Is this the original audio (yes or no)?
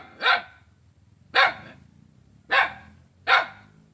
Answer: yes